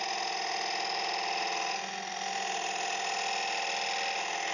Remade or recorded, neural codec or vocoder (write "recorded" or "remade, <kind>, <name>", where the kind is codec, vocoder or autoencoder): recorded